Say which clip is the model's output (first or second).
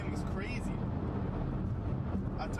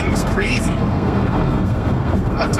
second